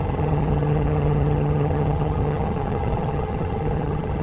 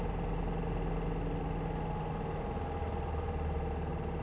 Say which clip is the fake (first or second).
first